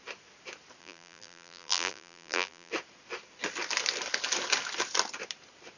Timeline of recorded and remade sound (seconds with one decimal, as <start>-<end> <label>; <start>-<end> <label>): 0.0-0.8 recorded; 0.8-2.7 remade; 2.7-5.8 recorded